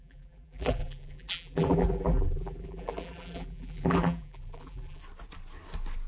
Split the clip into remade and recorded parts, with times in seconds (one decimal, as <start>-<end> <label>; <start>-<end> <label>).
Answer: 0.0-5.0 remade; 5.0-6.1 recorded